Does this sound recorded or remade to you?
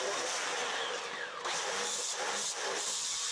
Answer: recorded